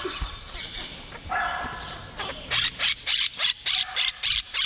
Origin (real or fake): fake